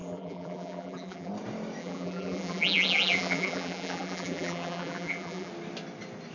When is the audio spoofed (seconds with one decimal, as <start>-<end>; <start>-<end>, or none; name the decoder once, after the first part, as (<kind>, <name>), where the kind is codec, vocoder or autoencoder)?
0.0-1.3 (vocoder, BigVGAN v2); 1.8-5.5